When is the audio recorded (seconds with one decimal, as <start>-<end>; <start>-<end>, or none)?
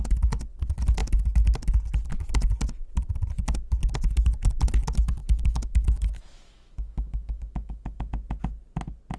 0.0-5.2; 8.1-9.2